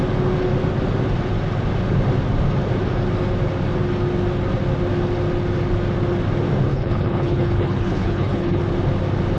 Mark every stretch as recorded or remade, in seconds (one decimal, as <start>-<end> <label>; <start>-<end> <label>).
0.0-6.7 recorded; 6.7-8.6 remade; 8.6-9.4 recorded